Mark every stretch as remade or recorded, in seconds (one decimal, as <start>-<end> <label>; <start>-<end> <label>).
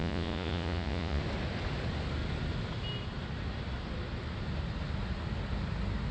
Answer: 0.0-1.2 remade; 1.2-6.1 recorded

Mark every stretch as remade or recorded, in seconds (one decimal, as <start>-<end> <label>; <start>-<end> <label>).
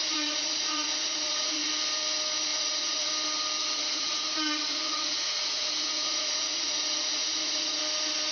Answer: 0.0-1.7 remade; 1.7-2.5 recorded; 2.5-3.1 remade; 3.1-3.6 recorded; 3.6-7.8 remade; 7.8-8.3 recorded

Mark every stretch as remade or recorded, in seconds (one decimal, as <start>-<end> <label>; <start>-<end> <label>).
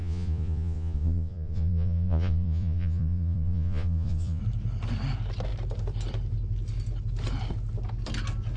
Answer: 0.0-4.4 remade; 4.4-8.6 recorded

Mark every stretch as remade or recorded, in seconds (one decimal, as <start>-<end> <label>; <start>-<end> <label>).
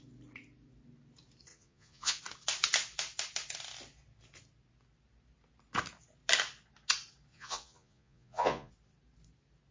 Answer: 0.0-1.5 recorded; 1.5-2.2 remade; 2.2-7.3 recorded; 7.3-8.7 remade; 8.7-9.7 recorded